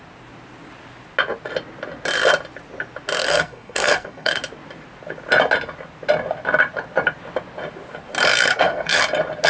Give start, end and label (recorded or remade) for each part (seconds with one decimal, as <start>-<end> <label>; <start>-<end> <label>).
0.0-3.2 recorded; 3.2-4.4 remade; 4.4-8.3 recorded; 8.3-9.0 remade; 9.0-9.5 recorded